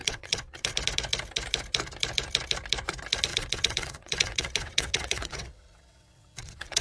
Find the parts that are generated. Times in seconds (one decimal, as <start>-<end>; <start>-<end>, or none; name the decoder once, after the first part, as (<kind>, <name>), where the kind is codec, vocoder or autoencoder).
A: 0.0-0.7 (vocoder, WaveNeXt); 3.3-6.8